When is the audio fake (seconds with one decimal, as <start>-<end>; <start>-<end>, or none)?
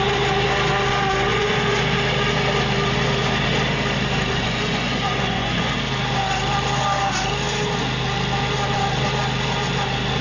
1.3-1.8; 4.3-5.7